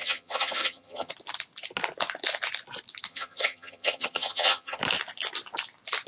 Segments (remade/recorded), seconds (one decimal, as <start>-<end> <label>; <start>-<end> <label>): 0.0-1.1 remade; 1.1-3.1 recorded; 3.1-4.8 remade; 4.8-6.1 recorded